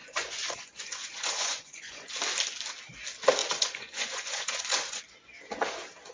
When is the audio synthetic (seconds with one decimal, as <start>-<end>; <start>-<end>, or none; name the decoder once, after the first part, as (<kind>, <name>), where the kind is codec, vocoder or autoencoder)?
0.0-2.1 (vocoder, Vocos); 3.4-5.0